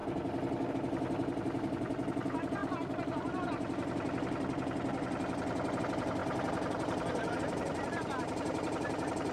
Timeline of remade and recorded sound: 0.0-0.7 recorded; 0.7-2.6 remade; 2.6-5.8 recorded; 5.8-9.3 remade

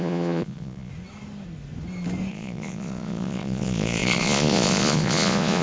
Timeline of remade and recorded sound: 0.0-0.9 remade; 0.9-2.3 recorded; 2.3-5.6 remade

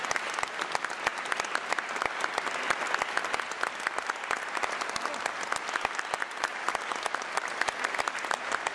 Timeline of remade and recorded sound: 0.0-8.7 recorded

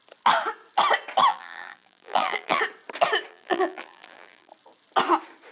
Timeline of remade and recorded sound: 0.0-1.3 recorded; 1.3-2.6 remade; 2.6-3.3 recorded; 3.3-4.5 remade; 4.5-5.5 recorded